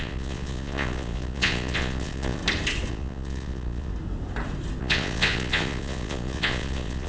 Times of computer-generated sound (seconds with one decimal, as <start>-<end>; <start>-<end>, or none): 0.0-2.4; 2.9-3.9; 4.8-7.1